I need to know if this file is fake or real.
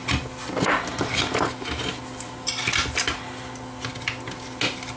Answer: real